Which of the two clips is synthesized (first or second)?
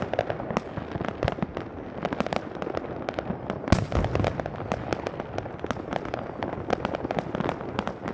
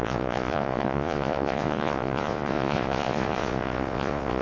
second